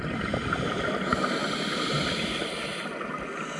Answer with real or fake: real